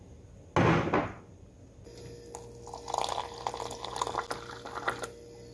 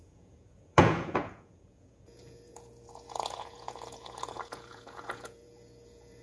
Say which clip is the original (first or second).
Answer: first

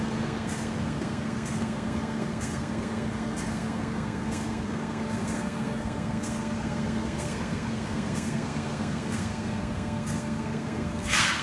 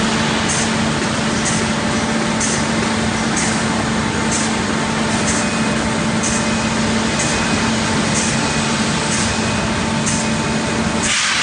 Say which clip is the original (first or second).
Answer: second